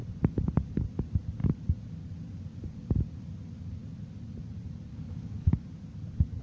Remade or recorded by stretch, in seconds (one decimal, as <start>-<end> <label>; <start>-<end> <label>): 0.0-4.9 recorded; 4.9-5.5 remade; 5.5-6.4 recorded